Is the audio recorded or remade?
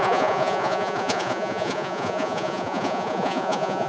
remade